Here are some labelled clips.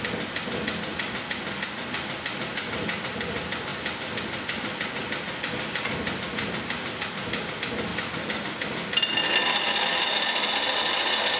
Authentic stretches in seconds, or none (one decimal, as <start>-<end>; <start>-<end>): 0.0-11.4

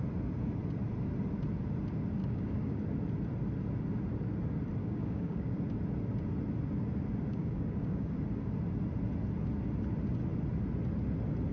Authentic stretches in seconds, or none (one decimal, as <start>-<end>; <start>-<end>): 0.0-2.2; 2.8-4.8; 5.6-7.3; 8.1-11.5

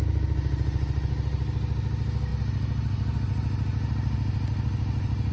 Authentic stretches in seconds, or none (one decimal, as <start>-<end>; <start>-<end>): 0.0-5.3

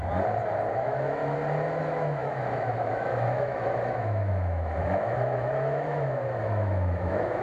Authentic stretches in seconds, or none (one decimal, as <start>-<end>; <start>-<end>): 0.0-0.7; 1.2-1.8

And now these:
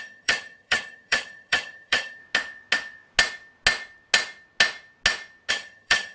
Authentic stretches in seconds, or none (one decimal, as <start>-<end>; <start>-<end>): 2.2-5.5

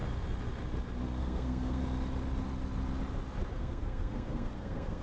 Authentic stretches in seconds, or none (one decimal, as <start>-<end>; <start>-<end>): 0.0-1.2; 1.8-3.5

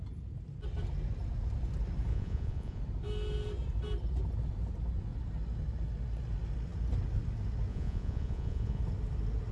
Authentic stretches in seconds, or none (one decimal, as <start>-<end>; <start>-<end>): 0.0-2.1; 2.8-7.7; 8.8-9.5